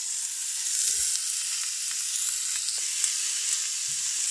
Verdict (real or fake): real